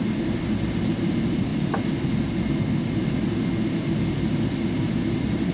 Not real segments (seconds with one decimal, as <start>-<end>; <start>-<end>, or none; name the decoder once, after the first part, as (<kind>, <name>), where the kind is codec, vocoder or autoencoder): 0.0-1.5 (vocoder, BigVGAN v2); 4.8-5.5